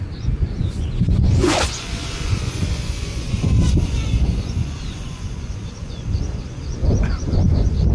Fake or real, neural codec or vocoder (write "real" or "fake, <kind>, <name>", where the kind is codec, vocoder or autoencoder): fake, vocoder, Vocos